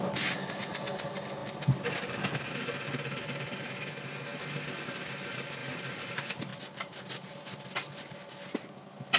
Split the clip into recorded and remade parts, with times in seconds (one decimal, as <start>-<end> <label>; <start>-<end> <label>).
0.0-5.6 recorded; 5.6-6.1 remade; 6.1-6.5 recorded; 6.5-7.4 remade; 7.4-9.2 recorded